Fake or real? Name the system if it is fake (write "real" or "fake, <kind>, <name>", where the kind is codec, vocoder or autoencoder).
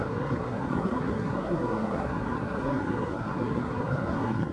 fake, codec, SNAC